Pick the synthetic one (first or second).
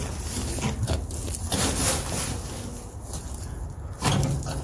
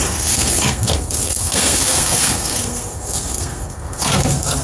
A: second